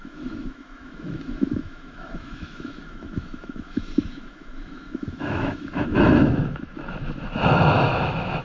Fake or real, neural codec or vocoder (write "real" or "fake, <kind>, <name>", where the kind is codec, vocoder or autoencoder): fake, autoencoder, DAC-VAE